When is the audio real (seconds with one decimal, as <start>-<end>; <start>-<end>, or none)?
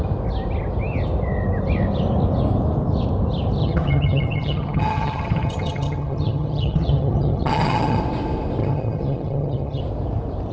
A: 0.0-3.6; 8.0-8.6; 9.8-10.5